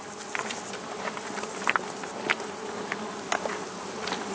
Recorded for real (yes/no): no